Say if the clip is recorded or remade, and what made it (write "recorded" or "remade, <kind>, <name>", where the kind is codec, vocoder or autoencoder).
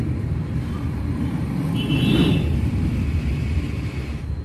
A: remade, vocoder, BigVGAN v2